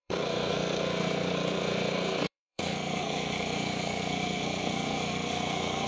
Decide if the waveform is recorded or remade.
remade